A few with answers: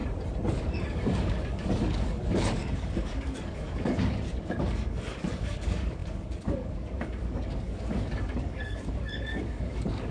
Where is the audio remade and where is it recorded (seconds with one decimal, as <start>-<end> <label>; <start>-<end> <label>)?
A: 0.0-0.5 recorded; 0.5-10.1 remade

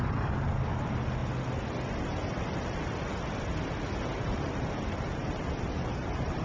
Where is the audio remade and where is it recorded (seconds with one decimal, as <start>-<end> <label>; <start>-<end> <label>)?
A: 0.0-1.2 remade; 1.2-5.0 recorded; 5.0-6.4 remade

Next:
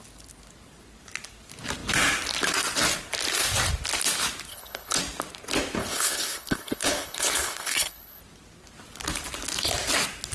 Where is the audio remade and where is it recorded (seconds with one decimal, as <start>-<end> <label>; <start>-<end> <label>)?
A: 0.0-4.5 recorded; 4.5-5.0 remade; 5.0-5.8 recorded; 5.8-8.2 remade; 8.2-10.3 recorded

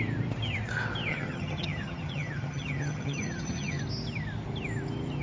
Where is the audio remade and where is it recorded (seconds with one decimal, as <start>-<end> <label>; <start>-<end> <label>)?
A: 0.0-1.1 recorded; 1.1-3.8 remade; 3.8-5.2 recorded

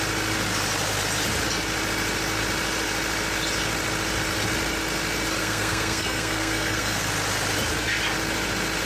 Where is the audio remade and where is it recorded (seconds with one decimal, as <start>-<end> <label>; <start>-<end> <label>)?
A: 0.0-5.4 recorded; 5.4-7.1 remade; 7.1-8.9 recorded

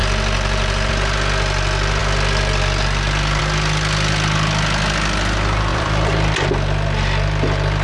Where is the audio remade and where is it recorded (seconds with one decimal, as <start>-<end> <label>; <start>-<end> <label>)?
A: 0.0-0.9 remade; 0.9-5.7 recorded; 5.7-6.5 remade; 6.5-7.8 recorded